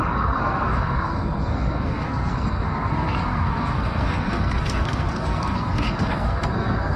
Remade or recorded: remade